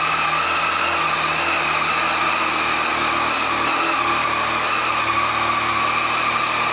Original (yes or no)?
yes